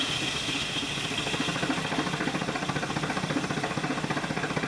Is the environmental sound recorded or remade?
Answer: recorded